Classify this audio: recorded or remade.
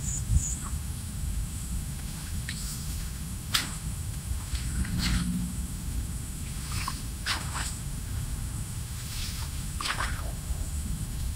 remade